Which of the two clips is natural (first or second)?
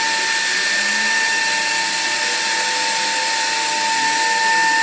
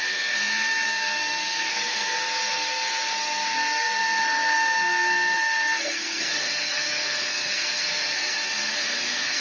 first